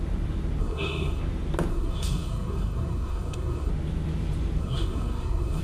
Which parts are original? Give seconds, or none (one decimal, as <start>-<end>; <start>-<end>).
0.0-0.6; 1.2-1.7; 3.7-4.6